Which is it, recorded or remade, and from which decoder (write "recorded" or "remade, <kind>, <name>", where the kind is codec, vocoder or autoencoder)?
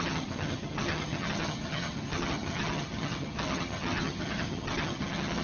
remade, vocoder, HiFi-GAN